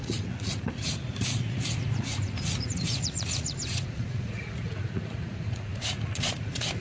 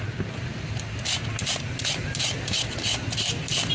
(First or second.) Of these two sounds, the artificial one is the first